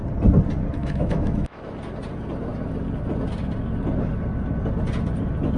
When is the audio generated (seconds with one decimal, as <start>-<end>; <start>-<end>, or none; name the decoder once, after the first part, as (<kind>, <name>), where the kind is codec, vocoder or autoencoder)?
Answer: 0.8-1.7 (autoencoder, DAC-VAE)